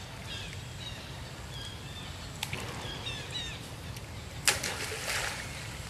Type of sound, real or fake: real